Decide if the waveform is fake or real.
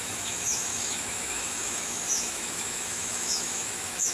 fake